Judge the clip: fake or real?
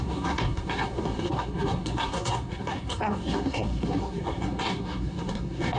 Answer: fake